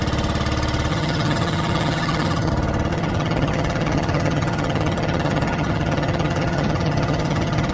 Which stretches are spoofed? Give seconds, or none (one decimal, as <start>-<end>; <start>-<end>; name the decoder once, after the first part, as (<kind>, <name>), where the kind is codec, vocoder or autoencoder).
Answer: 0.9-2.5 (vocoder, HiFi-GAN); 2.9-7.7